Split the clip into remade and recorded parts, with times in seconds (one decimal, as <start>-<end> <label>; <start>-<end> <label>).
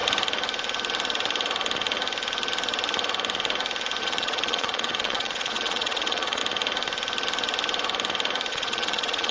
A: 0.0-4.0 recorded; 4.0-6.4 remade; 6.4-8.5 recorded; 8.5-9.3 remade